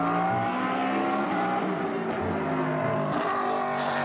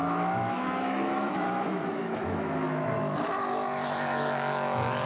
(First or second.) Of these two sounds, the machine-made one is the second